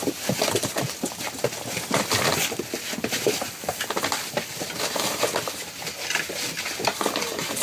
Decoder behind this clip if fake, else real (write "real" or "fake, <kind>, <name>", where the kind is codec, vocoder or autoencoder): real